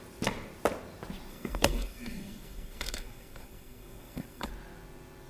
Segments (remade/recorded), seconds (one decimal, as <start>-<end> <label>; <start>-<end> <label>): 0.0-1.3 recorded; 1.3-4.5 remade; 4.5-5.3 recorded